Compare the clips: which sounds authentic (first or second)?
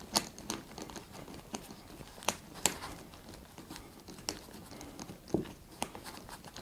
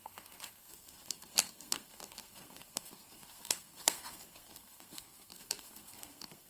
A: first